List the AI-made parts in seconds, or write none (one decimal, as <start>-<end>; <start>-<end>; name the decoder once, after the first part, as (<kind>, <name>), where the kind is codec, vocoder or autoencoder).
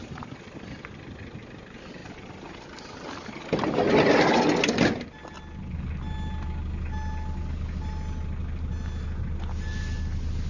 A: none